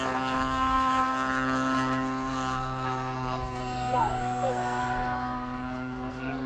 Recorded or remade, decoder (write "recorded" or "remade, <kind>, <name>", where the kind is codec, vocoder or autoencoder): remade, codec, SNAC